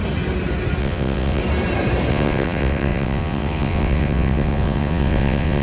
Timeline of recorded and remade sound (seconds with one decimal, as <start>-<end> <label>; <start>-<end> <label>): 0.0-0.8 recorded; 0.8-1.4 remade; 1.4-2.1 recorded; 2.1-5.6 remade